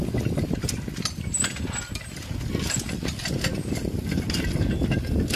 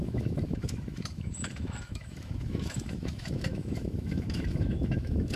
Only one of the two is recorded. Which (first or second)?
first